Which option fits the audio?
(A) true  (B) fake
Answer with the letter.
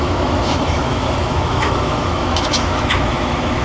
B